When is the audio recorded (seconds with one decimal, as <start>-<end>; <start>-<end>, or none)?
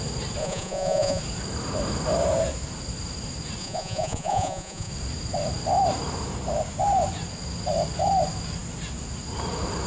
0.0-0.4; 1.2-3.6; 4.9-9.9